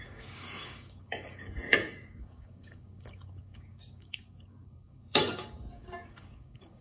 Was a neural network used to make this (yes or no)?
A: yes